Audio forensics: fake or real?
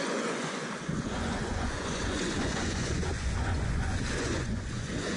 fake